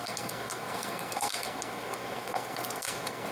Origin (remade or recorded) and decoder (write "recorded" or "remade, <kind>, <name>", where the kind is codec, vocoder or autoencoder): remade, codec, SNAC